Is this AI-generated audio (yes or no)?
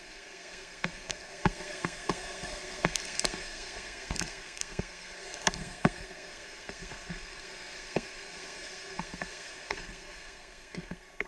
yes